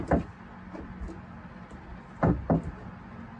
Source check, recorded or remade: recorded